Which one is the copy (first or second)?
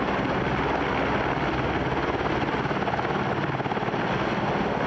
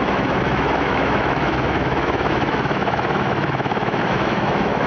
second